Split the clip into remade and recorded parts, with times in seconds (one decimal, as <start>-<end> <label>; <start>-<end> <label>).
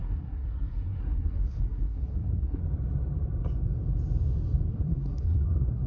0.0-2.6 remade; 2.6-4.7 recorded; 4.7-5.9 remade